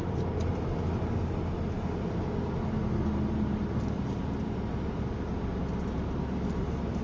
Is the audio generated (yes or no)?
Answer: no